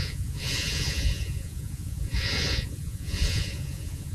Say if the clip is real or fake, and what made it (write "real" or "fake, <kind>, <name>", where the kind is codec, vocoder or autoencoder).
fake, vocoder, Vocos